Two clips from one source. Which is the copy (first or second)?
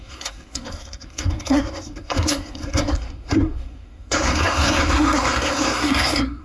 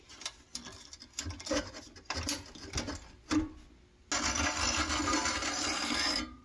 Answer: first